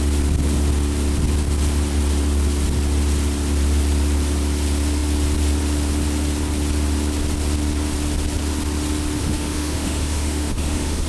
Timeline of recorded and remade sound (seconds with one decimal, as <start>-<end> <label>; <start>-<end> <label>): 0.0-9.2 recorded; 9.2-11.1 remade

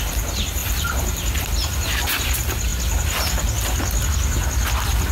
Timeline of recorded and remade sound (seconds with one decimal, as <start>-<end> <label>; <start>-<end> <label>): 0.0-0.6 recorded; 0.6-1.4 remade; 1.4-5.1 recorded

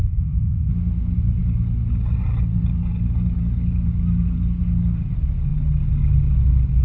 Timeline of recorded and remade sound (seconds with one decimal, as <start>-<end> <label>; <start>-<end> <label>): 0.0-0.7 remade; 0.7-6.8 recorded